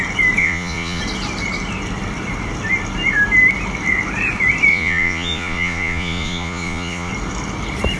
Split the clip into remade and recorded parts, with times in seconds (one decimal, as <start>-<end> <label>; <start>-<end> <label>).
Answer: 0.0-0.4 recorded; 0.4-1.0 remade; 1.0-4.7 recorded; 4.7-7.1 remade; 7.1-8.0 recorded

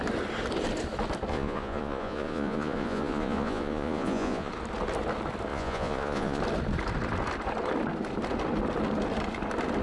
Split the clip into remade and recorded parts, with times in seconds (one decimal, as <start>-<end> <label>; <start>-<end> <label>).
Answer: 0.0-1.3 recorded; 1.3-4.5 remade; 4.5-5.5 recorded; 5.5-6.4 remade; 6.4-9.8 recorded

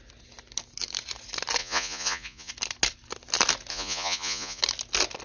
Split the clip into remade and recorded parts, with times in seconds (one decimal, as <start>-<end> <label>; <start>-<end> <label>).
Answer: 0.0-1.6 recorded; 1.6-2.5 remade; 2.5-3.7 recorded; 3.7-4.6 remade; 4.6-5.2 recorded

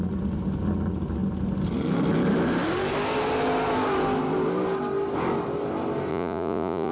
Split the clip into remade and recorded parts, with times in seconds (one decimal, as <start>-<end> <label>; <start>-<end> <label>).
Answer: 0.0-6.1 recorded; 6.1-6.9 remade